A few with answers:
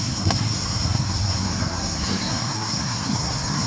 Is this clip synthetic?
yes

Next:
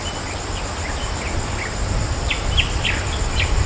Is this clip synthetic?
no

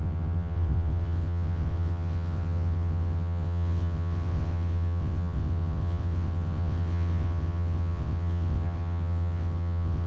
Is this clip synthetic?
yes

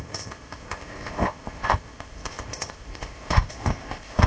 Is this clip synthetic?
yes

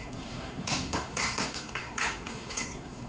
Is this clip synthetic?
yes